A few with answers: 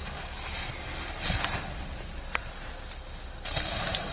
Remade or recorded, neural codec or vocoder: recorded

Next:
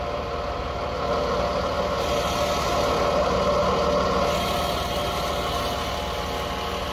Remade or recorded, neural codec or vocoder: recorded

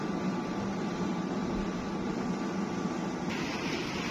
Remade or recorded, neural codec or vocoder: remade, vocoder, BigVGAN v2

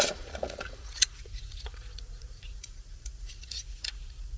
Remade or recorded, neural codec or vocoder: remade, vocoder, Vocos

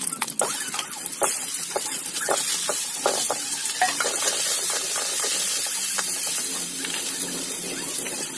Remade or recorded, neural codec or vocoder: recorded